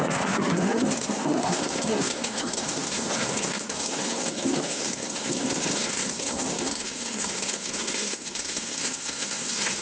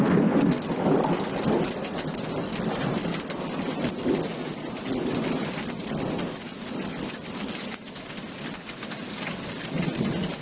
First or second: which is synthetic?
first